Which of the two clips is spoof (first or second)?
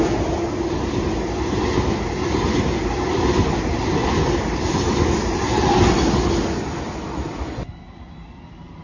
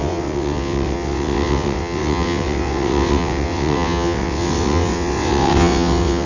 second